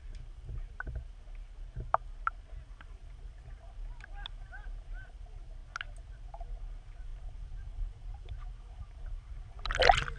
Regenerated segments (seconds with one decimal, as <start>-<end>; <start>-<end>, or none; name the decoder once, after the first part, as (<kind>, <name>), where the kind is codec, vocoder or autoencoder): none